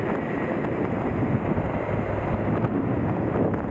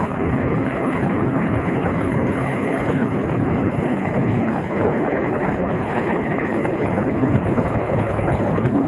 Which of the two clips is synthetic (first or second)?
second